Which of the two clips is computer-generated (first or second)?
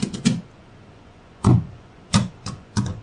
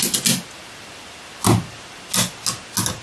first